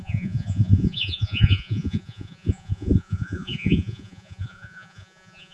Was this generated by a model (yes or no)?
yes